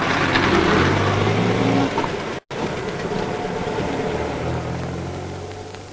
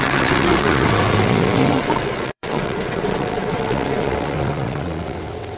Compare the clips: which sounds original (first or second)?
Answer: first